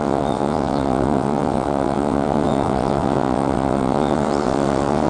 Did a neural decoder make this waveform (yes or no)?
yes